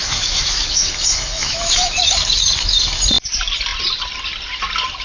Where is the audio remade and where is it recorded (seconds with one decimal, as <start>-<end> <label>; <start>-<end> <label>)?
0.0-3.0 remade; 3.0-5.0 recorded